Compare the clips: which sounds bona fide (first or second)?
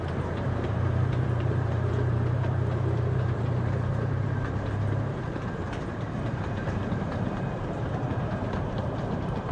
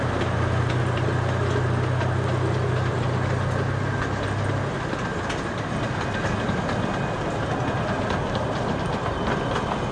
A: second